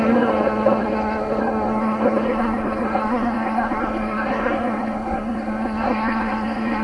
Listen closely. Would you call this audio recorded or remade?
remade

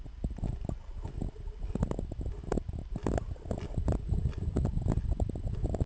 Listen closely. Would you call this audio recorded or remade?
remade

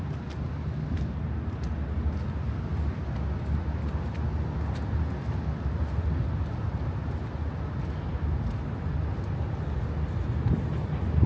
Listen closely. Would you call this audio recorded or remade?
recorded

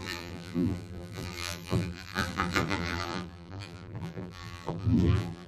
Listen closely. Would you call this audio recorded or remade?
remade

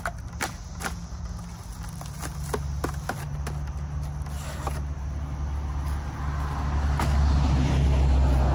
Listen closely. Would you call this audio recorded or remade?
recorded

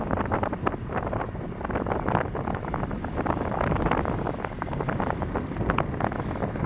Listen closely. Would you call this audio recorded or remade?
recorded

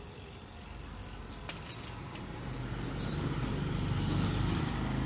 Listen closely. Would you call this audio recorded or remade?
recorded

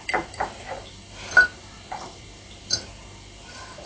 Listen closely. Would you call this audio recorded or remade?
remade